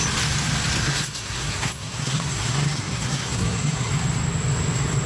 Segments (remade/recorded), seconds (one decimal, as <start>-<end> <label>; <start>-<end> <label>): 0.0-0.8 recorded; 0.8-3.9 remade; 3.9-5.1 recorded